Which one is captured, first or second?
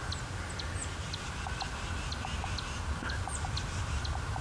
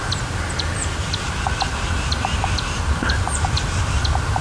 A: first